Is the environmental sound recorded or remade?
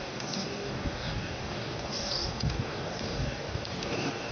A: remade